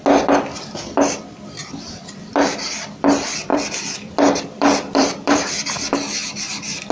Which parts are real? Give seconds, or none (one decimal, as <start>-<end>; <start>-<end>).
0.0-1.6; 3.0-3.5; 5.5-6.9